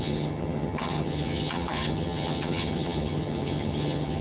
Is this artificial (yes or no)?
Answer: yes